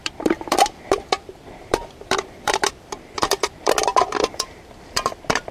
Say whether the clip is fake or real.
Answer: fake